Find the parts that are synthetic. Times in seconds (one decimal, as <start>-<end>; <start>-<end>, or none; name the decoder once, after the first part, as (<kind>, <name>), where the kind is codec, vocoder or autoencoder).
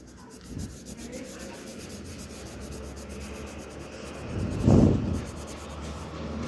none